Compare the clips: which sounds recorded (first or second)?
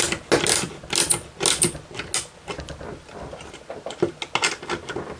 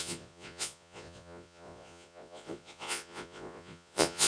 first